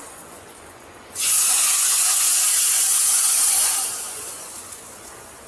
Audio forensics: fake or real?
fake